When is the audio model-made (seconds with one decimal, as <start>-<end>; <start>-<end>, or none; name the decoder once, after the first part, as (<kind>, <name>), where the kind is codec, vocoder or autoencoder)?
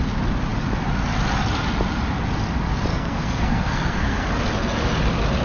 2.9-4.3 (codec, SNAC)